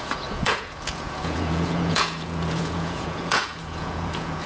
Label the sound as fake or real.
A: fake